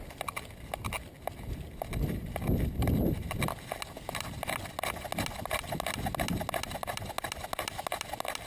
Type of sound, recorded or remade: recorded